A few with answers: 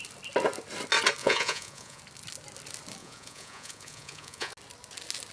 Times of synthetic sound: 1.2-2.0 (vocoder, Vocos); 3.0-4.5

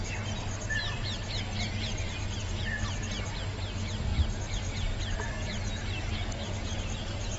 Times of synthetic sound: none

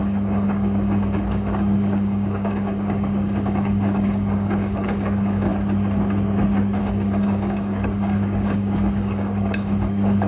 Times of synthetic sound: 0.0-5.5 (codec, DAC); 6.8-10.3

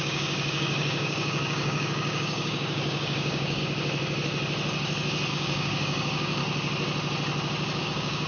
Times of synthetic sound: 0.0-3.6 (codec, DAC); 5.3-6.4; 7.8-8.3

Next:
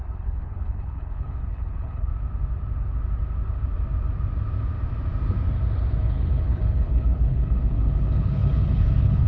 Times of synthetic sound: 0.0-2.1 (codec, HILCodec); 6.0-9.3

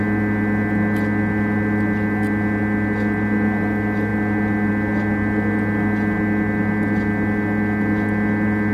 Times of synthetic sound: none

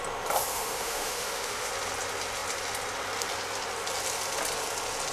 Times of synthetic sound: 0.5-1.7 (autoencoder, DAC-VAE)